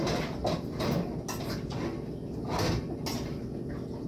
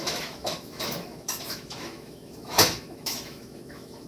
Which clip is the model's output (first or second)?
second